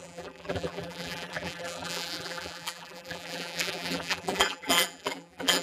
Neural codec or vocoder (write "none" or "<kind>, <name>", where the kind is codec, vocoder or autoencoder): vocoder, BigVGAN v2